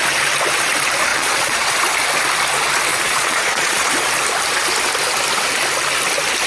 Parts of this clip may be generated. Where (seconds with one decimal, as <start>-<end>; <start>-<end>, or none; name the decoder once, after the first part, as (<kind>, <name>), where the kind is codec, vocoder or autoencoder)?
1.1-1.7 (vocoder, Vocos); 2.9-3.9